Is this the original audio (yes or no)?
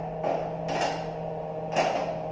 yes